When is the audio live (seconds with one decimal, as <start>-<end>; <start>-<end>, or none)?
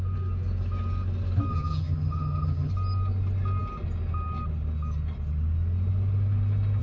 0.0-1.5; 2.7-6.8